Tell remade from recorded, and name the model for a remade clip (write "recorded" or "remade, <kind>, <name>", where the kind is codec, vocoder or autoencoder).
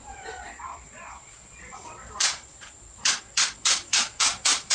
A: remade, vocoder, Vocos